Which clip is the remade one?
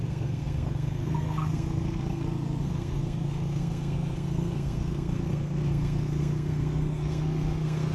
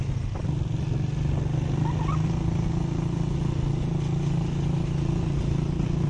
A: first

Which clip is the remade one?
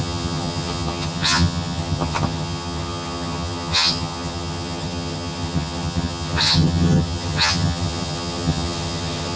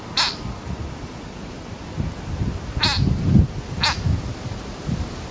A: first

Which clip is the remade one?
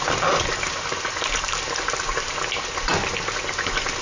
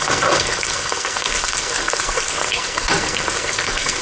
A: second